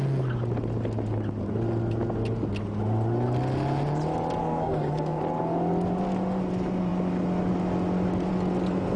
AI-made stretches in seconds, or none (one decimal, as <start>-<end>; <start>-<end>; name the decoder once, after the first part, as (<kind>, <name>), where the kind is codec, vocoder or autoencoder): 4.4-5.2 (codec, SNAC)